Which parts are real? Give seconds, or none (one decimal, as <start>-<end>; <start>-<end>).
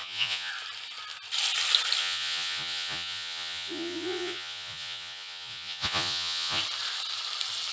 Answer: 0.5-2.0; 6.6-7.7